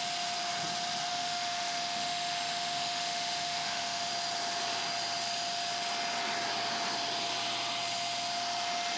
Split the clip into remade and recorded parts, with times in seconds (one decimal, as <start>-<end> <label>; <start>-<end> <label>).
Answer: 0.0-1.1 recorded; 1.1-4.1 remade; 4.1-9.0 recorded

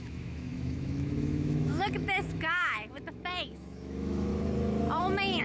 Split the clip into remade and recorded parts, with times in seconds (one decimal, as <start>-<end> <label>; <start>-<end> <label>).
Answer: 0.0-4.3 remade; 4.3-5.4 recorded